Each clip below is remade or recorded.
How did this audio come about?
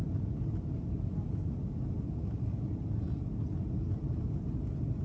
recorded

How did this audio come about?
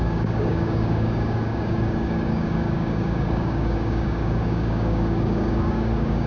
remade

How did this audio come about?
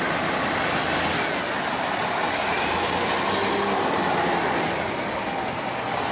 recorded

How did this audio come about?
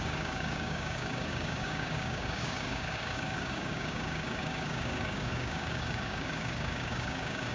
remade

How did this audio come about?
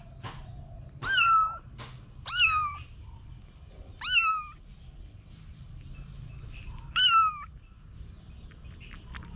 recorded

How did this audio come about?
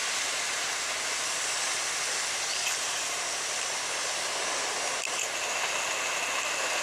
recorded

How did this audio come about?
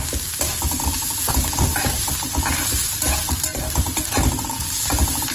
recorded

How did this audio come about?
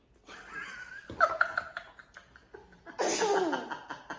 recorded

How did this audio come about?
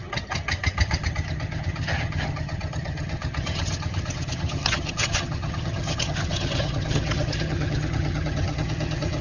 remade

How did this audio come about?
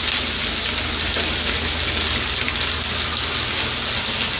recorded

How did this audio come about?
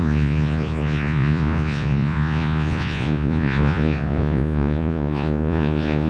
remade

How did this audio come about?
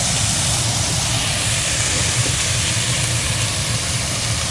remade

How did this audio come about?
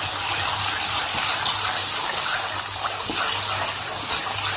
recorded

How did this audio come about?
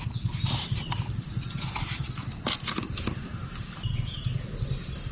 recorded